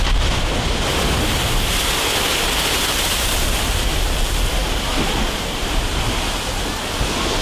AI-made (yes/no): no